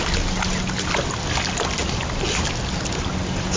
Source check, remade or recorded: recorded